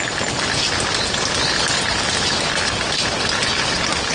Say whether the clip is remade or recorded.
recorded